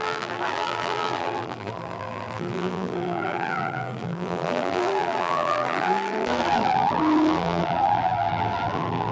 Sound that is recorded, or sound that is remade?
remade